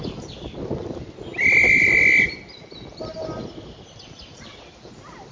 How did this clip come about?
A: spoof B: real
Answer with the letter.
B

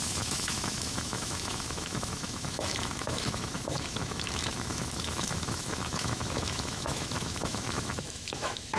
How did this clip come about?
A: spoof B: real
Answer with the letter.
A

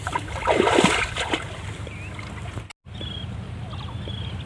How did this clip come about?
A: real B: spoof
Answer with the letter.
A